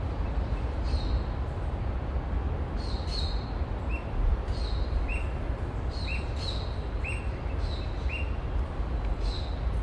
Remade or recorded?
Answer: recorded